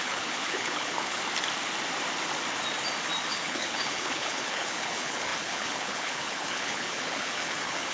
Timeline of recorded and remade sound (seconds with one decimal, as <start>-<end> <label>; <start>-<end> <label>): 0.0-1.2 remade; 1.2-3.3 recorded; 3.3-7.9 remade